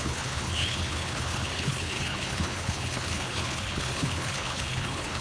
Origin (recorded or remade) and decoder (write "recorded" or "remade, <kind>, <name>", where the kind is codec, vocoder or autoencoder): remade, codec, HILCodec